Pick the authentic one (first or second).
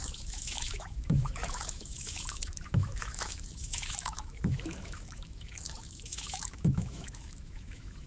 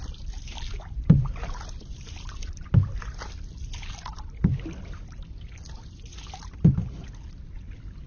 second